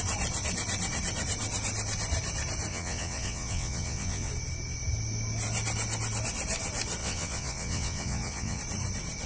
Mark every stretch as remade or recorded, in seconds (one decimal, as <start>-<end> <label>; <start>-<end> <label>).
0.0-2.7 recorded; 2.7-4.3 remade; 4.3-7.0 recorded; 7.0-8.6 remade; 8.6-9.3 recorded